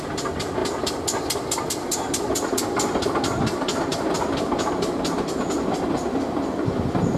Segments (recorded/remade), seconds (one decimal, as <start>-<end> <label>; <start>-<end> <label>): 0.0-7.2 recorded